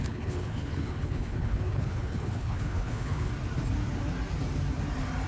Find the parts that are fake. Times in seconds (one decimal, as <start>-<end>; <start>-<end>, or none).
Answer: 0.0-3.3